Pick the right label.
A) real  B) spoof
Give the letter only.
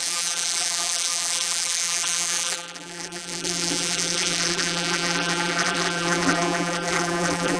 B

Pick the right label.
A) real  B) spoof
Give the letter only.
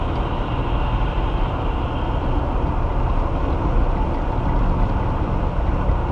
A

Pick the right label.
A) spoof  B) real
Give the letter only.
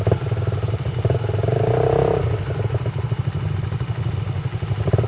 B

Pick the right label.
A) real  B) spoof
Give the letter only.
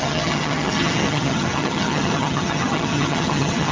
B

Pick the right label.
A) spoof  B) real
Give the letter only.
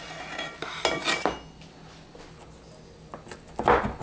B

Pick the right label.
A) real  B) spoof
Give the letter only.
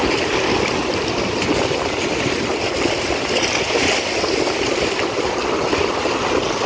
A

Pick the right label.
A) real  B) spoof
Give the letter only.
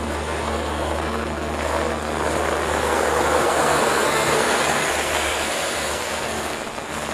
B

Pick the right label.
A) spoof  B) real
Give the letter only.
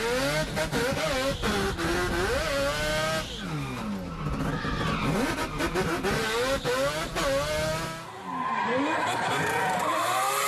B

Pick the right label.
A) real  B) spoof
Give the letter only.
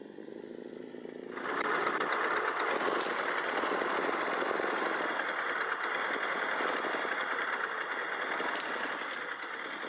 A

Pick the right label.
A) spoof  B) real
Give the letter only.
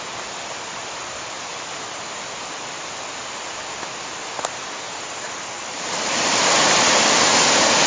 B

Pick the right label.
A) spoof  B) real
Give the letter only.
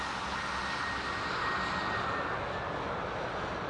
B